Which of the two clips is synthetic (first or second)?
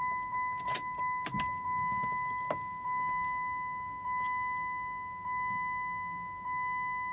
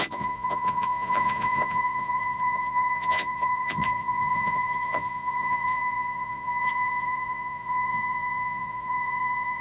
second